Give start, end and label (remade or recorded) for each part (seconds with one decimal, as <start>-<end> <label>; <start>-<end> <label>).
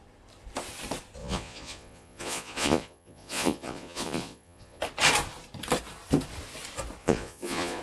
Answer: 0.0-1.2 recorded; 1.2-4.8 remade; 4.8-7.0 recorded; 7.0-7.8 remade